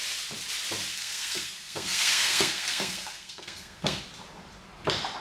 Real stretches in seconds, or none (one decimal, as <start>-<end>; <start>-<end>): 0.0-0.9; 4.0-5.2